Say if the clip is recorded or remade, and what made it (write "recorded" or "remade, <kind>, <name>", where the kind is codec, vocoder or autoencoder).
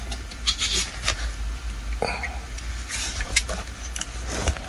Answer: recorded